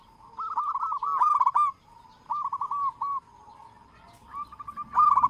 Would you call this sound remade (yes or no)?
no